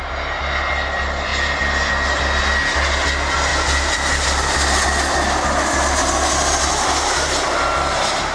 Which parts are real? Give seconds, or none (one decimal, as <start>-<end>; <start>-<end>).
0.0-8.3